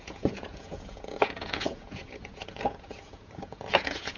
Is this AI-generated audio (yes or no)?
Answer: yes